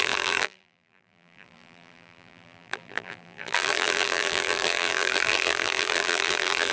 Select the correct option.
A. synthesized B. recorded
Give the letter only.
A